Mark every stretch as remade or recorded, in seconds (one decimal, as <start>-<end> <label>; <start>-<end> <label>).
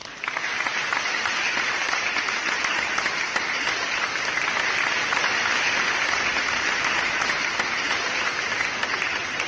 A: 0.0-9.5 recorded